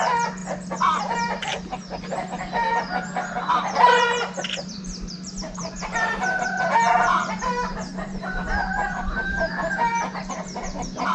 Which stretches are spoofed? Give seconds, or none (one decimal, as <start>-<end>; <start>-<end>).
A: 0.0-0.4; 1.0-1.5; 3.5-11.1